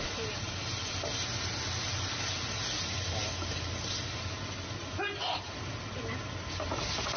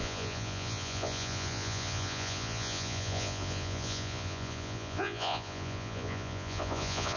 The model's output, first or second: second